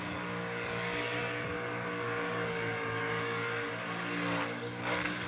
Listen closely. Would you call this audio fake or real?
fake